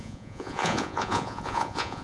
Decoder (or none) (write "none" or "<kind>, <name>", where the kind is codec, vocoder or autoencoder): vocoder, Vocos